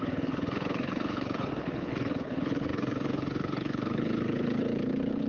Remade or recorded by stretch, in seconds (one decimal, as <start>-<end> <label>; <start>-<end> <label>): 0.0-5.3 remade